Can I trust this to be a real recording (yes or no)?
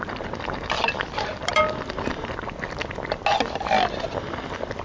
yes